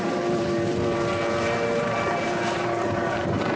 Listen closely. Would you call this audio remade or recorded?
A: remade